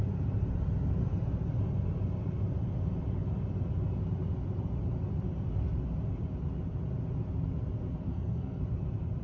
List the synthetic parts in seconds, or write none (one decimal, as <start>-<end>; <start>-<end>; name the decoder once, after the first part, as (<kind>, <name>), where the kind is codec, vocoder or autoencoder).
8.1-8.6 (codec, SNAC)

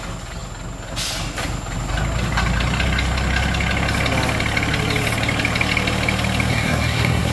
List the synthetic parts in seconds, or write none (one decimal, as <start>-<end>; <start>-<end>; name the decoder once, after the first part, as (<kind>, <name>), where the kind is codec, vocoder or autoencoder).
6.5-7.3 (codec, SNAC)

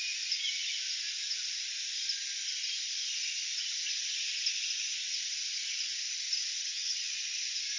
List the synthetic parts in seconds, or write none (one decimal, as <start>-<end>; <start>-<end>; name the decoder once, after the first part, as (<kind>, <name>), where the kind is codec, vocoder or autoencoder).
6.6-7.1 (vocoder, HiFi-GAN)

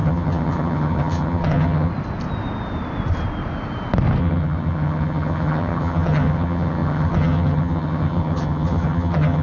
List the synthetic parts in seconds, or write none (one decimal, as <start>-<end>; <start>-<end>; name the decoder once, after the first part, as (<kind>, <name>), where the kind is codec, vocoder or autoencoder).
0.0-1.9 (vocoder, HiFi-GAN); 4.2-9.4